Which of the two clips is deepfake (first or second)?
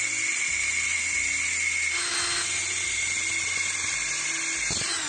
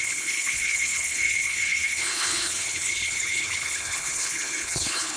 second